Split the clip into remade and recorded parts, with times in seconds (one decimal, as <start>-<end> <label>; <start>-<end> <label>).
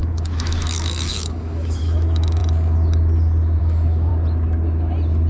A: 0.0-2.4 remade; 2.4-3.6 recorded; 3.6-4.1 remade; 4.1-5.3 recorded